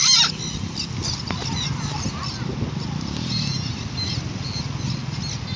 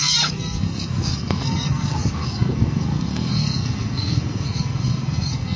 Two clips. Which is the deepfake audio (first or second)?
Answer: second